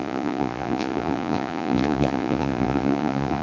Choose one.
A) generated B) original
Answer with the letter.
A